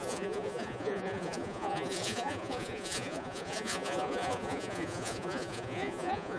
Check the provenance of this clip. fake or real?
fake